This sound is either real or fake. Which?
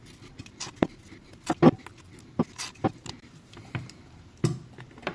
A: real